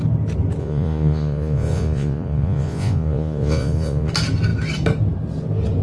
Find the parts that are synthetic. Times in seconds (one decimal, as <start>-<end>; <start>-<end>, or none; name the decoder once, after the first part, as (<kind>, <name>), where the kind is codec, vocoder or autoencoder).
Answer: 0.6-4.1 (vocoder, Vocos)